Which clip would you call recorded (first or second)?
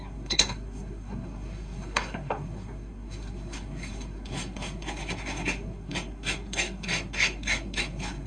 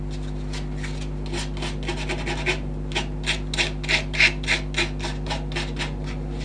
second